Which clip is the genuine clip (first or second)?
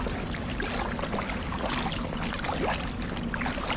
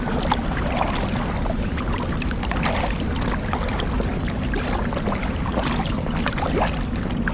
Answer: first